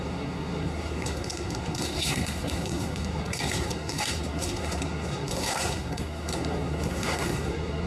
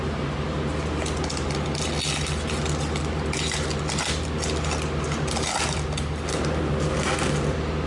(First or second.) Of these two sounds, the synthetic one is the first